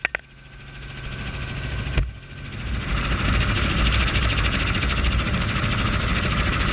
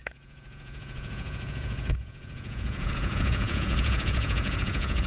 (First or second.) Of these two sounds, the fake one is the second